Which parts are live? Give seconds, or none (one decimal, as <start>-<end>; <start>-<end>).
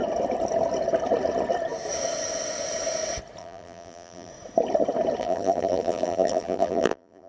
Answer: 0.0-3.4; 4.3-5.2